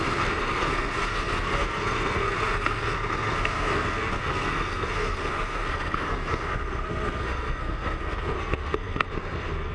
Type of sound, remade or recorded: remade